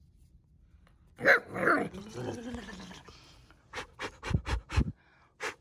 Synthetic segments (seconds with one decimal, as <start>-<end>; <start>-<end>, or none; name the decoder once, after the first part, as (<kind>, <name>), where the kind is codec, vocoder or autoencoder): none